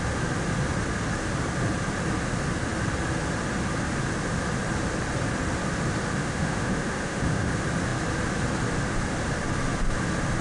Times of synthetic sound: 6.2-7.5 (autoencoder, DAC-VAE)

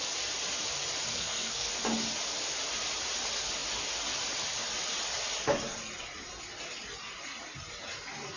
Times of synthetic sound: 1.1-1.7 (codec, SNAC)

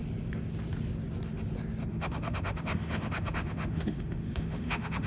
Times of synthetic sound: 1.9-5.1 (autoencoder, DAC-VAE)